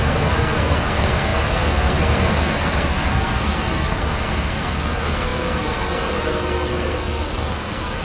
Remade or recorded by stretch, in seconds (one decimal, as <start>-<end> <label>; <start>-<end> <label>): 0.0-8.0 remade